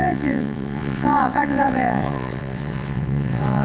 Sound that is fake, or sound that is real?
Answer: fake